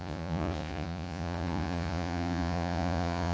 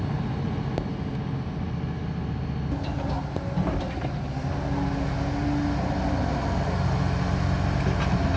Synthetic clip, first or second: first